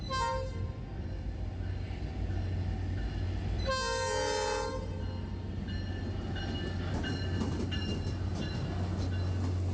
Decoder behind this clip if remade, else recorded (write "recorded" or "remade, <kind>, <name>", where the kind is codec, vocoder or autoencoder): recorded